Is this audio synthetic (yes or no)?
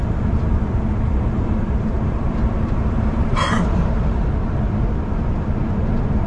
yes